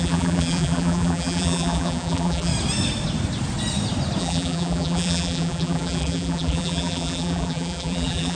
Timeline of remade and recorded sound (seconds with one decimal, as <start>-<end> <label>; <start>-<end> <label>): 0.0-2.5 remade; 2.5-4.2 recorded; 4.2-8.4 remade